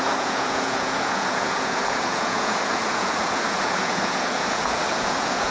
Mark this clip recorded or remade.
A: remade